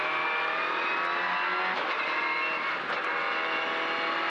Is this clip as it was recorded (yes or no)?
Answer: yes